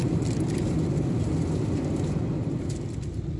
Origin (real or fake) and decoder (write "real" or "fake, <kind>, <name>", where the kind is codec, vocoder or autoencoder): real